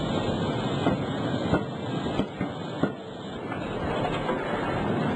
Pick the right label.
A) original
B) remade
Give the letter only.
A